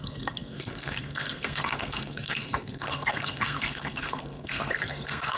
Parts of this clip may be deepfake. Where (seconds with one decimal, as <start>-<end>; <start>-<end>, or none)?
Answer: 0.0-5.4